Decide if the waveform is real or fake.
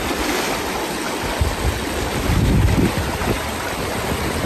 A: real